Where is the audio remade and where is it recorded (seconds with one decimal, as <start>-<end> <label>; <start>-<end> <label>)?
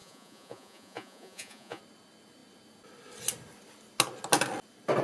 0.0-1.8 remade; 1.8-5.0 recorded